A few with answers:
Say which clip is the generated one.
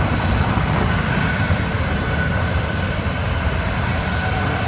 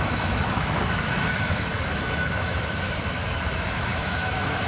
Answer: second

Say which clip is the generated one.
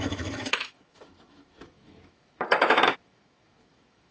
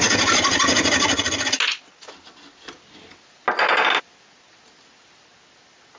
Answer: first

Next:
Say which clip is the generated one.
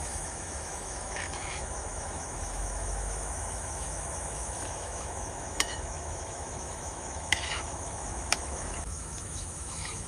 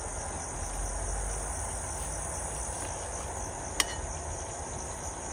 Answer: first